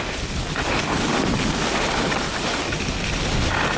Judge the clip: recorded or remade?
recorded